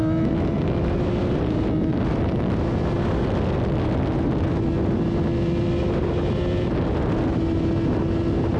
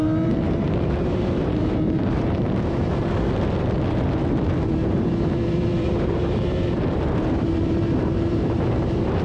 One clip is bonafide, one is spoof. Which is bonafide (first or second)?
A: first